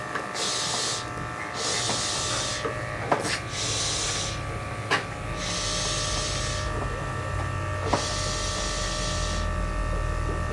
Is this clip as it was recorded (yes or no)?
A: yes